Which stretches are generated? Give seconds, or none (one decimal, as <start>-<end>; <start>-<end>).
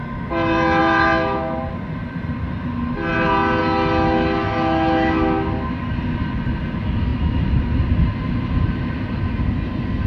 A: none